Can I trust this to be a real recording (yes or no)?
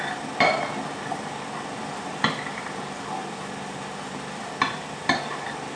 yes